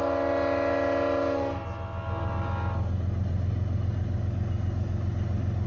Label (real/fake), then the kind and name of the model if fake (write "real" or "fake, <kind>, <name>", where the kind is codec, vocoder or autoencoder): real